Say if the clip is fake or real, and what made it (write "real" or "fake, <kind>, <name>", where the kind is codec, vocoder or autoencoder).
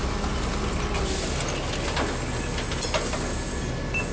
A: real